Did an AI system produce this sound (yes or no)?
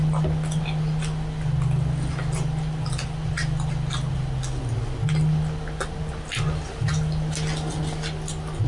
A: no